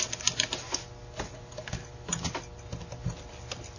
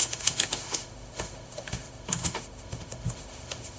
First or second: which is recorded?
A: first